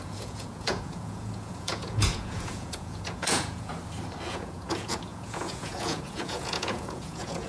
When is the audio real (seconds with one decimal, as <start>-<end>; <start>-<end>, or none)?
3.7-4.3